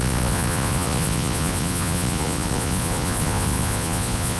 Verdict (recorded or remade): remade